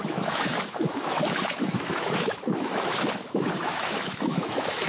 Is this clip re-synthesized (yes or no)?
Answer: yes